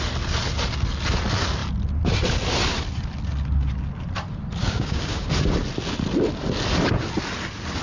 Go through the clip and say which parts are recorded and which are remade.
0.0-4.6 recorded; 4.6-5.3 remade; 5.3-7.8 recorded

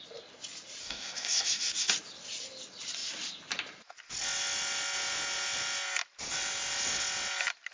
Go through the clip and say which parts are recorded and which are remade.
0.0-0.8 recorded; 0.8-1.9 remade; 1.9-7.7 recorded